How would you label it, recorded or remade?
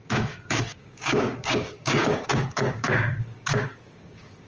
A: remade